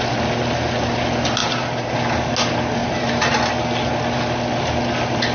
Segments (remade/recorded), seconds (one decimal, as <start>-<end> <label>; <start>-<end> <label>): 0.0-1.4 recorded; 1.4-1.9 remade; 1.9-2.8 recorded; 2.8-3.5 remade; 3.5-5.3 recorded